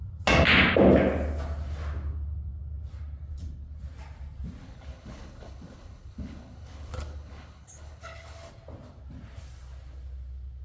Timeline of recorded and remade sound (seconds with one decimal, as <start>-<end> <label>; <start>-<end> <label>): 0.0-4.6 recorded; 4.6-8.5 remade; 8.5-10.6 recorded